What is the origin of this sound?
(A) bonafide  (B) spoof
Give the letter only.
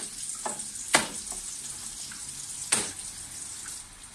A